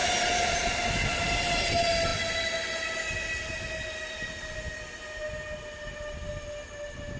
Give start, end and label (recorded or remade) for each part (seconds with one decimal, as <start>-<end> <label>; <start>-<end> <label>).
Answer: 0.0-7.2 recorded